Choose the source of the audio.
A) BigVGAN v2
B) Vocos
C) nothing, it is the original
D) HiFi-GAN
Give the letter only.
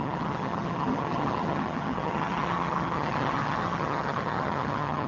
D